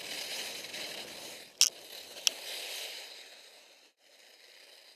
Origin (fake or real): real